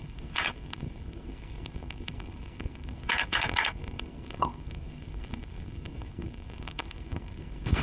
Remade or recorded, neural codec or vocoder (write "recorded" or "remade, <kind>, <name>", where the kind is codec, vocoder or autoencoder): remade, codec, SNAC